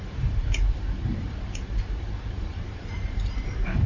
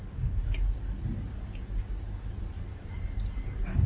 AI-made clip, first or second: first